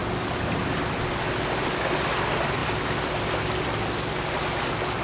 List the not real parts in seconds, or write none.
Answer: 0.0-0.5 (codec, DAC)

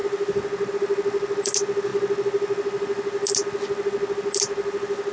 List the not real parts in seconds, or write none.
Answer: none